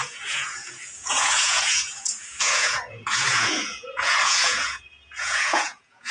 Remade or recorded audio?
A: remade